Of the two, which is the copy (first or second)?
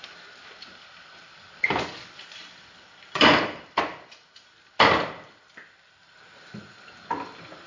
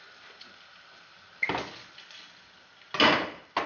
first